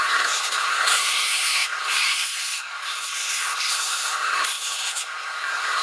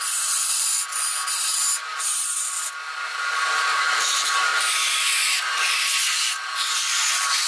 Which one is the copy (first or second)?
first